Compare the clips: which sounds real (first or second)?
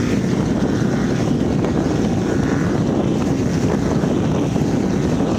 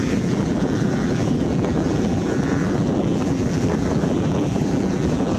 first